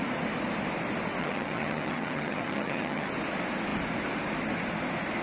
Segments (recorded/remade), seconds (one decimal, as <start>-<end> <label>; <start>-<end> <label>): 0.0-1.2 recorded; 1.2-3.1 remade; 3.1-5.2 recorded